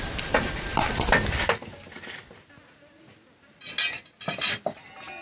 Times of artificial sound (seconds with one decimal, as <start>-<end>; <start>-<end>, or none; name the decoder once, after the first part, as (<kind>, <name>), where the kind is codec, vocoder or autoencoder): none